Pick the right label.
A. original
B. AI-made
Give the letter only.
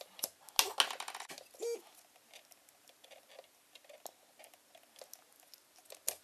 A